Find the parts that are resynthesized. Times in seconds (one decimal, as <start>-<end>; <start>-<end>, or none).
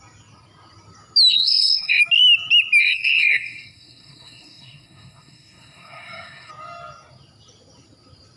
1.3-2.0; 2.8-6.5